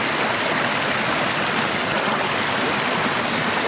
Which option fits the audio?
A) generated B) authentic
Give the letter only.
B